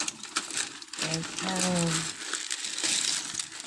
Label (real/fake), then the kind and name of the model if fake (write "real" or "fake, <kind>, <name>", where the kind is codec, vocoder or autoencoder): real